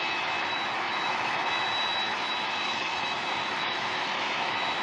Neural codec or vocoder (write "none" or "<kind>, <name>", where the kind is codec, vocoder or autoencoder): autoencoder, DAC-VAE